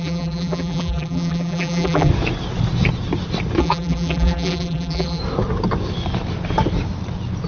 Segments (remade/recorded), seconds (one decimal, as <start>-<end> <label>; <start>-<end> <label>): 0.0-2.1 remade; 2.1-3.6 recorded; 3.6-5.2 remade; 5.2-7.5 recorded